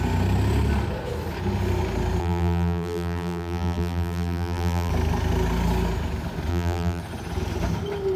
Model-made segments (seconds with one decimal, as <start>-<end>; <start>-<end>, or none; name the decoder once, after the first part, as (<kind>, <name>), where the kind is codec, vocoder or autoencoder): 2.2-4.9 (vocoder, BigVGAN v2); 6.5-7.0